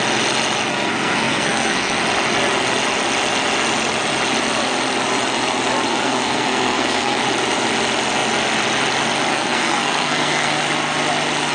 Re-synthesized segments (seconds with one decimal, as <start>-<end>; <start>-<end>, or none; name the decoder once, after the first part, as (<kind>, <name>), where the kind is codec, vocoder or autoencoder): 0.7-2.0 (codec, SNAC); 5.9-7.2; 9.3-10.6